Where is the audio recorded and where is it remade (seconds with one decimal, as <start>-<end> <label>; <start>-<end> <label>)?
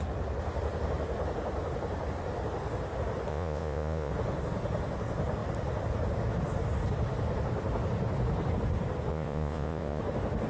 0.0-3.3 recorded; 3.3-4.1 remade; 4.1-9.1 recorded; 9.1-10.0 remade; 10.0-10.5 recorded